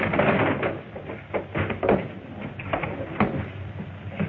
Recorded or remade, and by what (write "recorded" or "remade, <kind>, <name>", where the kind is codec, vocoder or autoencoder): recorded